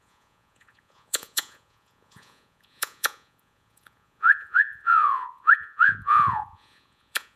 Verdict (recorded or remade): remade